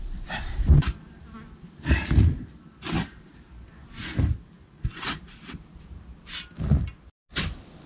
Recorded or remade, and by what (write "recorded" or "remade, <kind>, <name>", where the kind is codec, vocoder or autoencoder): recorded